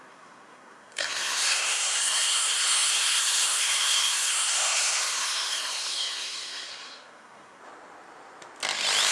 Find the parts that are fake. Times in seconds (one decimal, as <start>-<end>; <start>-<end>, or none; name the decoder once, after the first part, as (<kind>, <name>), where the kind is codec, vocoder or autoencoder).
0.0-7.6 (codec, SNAC)